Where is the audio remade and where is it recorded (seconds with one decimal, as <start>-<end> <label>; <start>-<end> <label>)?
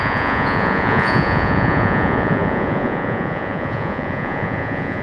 0.0-5.0 remade